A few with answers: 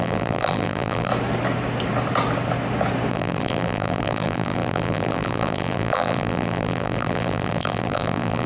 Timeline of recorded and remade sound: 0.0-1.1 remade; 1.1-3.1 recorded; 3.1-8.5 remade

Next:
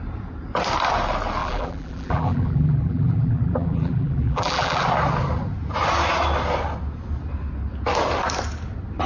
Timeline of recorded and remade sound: 0.0-1.4 recorded; 1.4-4.8 remade; 4.8-9.1 recorded

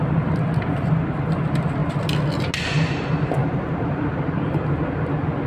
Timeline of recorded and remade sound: 0.0-3.4 recorded; 3.4-4.2 remade; 4.2-5.5 recorded

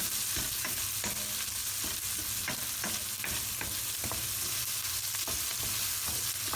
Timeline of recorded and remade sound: 0.0-6.6 recorded

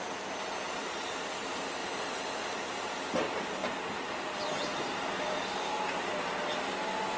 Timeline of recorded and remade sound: 0.0-1.8 recorded; 1.8-3.2 remade; 3.2-3.6 recorded; 3.6-6.1 remade; 6.1-7.2 recorded

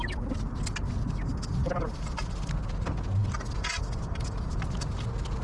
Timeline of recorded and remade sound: 0.0-1.6 recorded; 1.6-2.5 remade; 2.5-3.2 recorded; 3.2-4.6 remade; 4.6-5.4 recorded

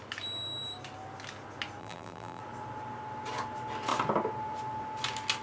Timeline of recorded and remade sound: 0.0-1.8 recorded; 1.8-2.4 remade; 2.4-5.4 recorded

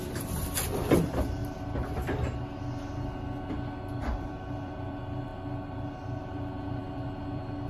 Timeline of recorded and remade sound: 0.0-1.4 remade; 1.4-4.0 recorded; 4.0-5.3 remade; 5.3-6.2 recorded; 6.2-7.7 remade